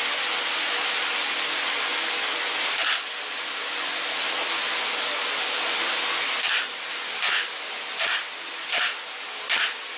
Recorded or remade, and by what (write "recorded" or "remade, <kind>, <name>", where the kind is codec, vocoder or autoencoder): recorded